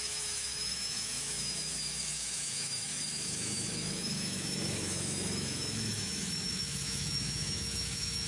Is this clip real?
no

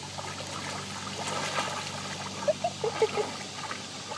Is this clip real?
yes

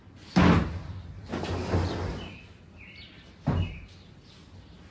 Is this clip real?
yes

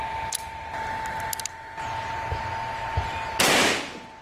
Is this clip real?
yes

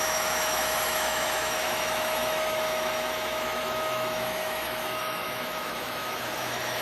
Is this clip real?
no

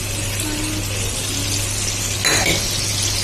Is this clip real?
yes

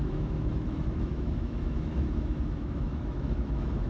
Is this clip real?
no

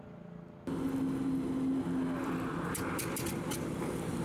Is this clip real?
yes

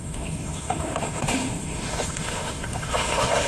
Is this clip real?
no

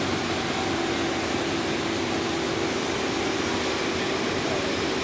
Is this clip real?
yes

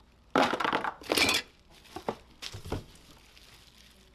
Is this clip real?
yes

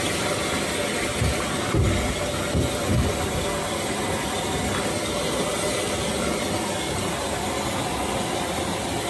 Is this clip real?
yes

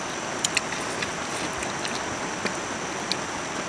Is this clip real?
yes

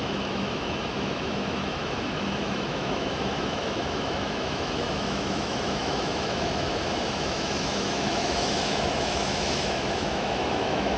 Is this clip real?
no